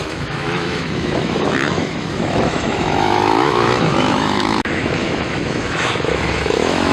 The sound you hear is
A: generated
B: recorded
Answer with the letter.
A